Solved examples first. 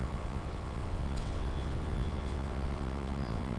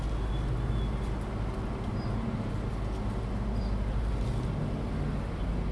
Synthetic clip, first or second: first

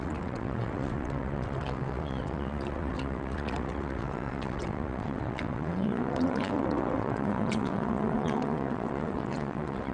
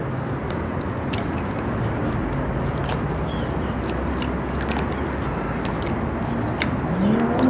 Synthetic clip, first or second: first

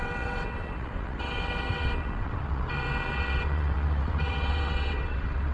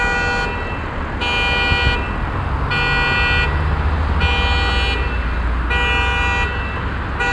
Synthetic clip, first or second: first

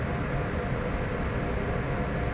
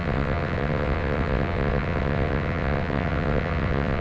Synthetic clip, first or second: second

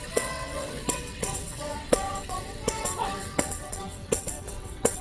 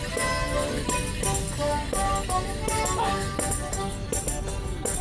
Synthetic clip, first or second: first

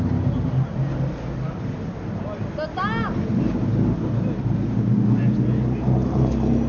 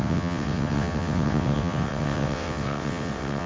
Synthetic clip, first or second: second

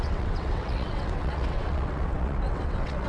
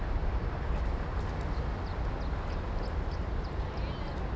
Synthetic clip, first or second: first